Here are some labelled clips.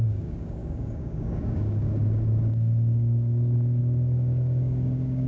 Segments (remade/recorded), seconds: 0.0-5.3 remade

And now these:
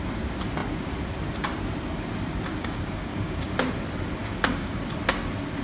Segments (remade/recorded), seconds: 0.0-2.6 recorded; 2.6-3.5 remade; 3.5-4.2 recorded; 4.2-4.8 remade; 4.8-5.6 recorded

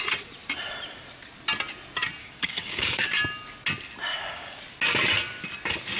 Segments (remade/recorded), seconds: 0.0-2.2 recorded; 2.2-3.1 remade; 3.1-4.1 recorded; 4.1-4.6 remade; 4.6-6.0 recorded

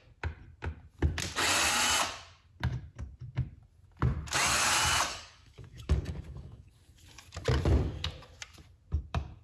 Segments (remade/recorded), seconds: 0.0-5.1 recorded; 5.1-6.7 remade; 6.7-9.4 recorded

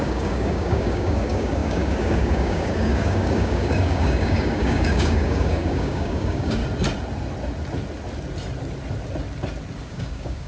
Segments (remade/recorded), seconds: 0.0-6.6 remade; 6.6-9.8 recorded; 9.8-10.5 remade